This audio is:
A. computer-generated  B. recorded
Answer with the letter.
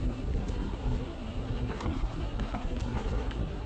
A